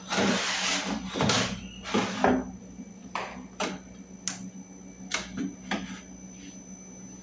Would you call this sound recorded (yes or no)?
yes